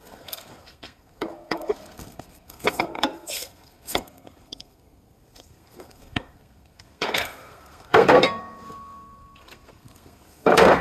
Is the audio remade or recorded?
remade